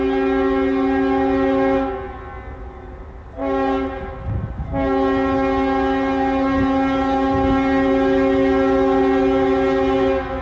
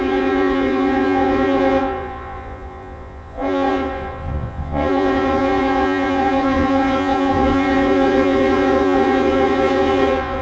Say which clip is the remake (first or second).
second